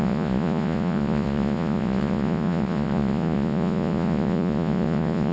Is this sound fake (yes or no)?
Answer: yes